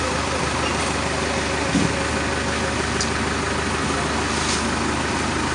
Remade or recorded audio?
recorded